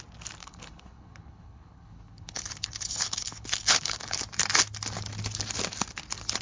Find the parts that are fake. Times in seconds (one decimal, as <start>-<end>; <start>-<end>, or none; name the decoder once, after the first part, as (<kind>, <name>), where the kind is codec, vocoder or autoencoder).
0.4-4.2 (codec, HILCodec)